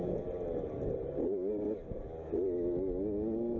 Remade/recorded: recorded